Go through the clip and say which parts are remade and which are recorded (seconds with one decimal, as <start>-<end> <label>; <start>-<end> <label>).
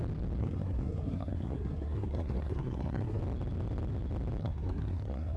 0.0-0.4 recorded; 0.4-3.2 remade; 3.2-4.4 recorded; 4.4-5.4 remade